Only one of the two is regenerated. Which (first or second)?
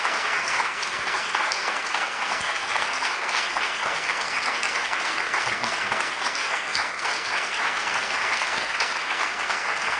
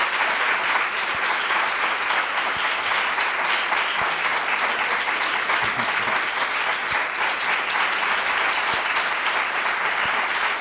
first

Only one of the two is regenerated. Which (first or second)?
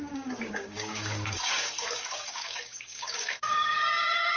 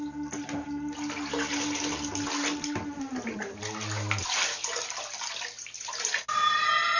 first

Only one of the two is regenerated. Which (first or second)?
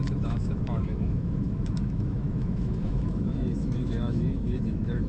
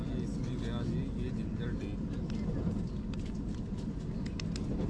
first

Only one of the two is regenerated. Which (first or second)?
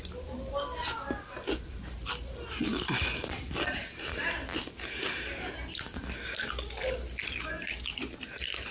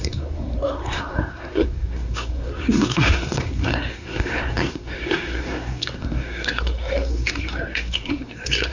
second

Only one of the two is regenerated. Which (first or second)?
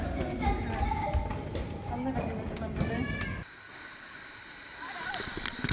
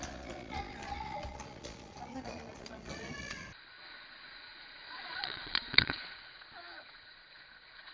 second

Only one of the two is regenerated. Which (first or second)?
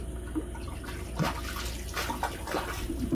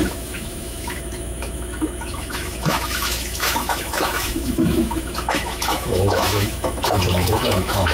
second